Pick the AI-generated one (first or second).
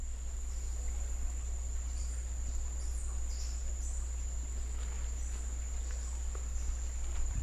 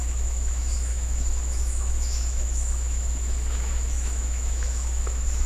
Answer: second